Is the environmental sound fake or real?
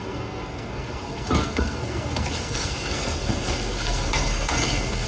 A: fake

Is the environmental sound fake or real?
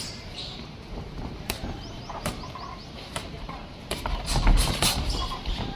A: fake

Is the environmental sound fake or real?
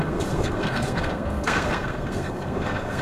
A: fake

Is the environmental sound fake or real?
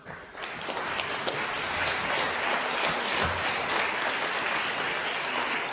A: real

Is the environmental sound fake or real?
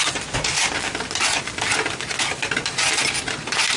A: real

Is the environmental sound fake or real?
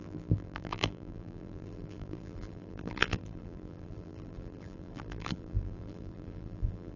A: fake